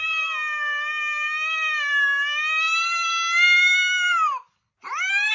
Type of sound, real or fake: real